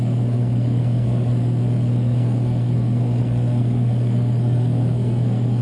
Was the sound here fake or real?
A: fake